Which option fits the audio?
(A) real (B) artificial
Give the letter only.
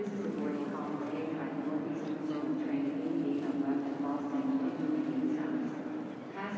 A